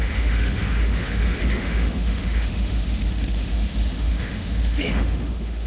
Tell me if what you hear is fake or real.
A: fake